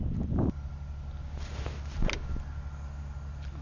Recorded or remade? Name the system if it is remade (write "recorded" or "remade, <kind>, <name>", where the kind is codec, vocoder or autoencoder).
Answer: recorded